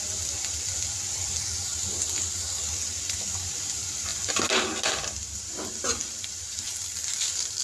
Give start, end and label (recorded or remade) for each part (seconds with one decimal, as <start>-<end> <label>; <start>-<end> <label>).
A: 0.0-1.7 remade; 1.7-3.2 recorded; 3.2-7.6 remade